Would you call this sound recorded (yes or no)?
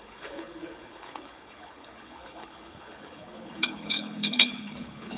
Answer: no